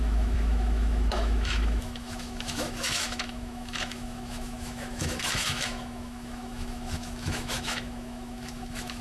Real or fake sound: fake